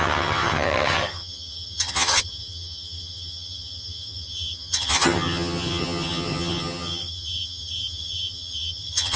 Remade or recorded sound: remade